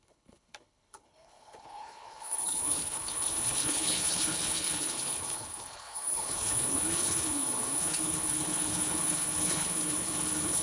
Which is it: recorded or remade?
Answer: remade